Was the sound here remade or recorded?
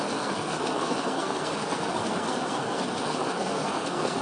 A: remade